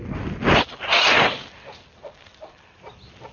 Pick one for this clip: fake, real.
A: real